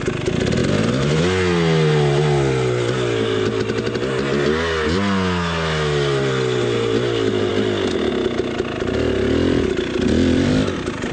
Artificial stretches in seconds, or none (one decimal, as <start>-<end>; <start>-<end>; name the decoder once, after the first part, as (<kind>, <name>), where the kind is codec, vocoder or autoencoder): none